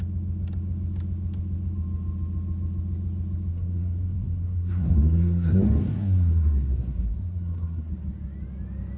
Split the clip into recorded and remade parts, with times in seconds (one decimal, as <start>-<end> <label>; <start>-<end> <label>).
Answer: 0.0-3.5 recorded; 3.5-7.9 remade; 7.9-9.0 recorded